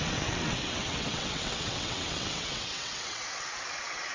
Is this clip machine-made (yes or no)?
yes